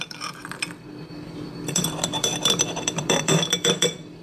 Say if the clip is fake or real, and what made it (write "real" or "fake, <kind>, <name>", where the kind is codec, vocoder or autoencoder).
fake, vocoder, BigVGAN v2